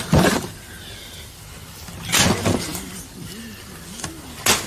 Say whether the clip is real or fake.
real